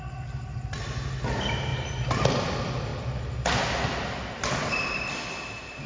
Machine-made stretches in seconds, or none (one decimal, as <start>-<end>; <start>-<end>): none